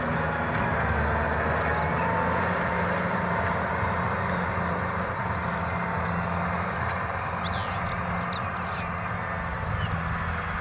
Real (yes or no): yes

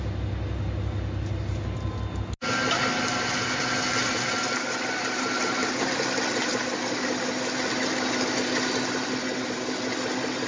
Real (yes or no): yes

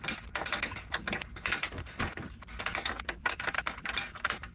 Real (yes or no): yes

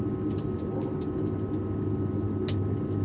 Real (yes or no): yes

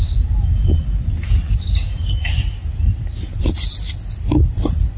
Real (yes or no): yes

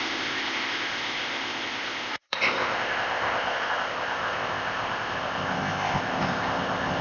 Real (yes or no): no